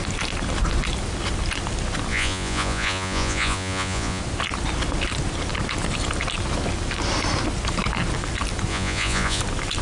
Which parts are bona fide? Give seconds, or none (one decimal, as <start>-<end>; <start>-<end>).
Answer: 0.0-2.1; 4.2-8.7; 9.4-9.8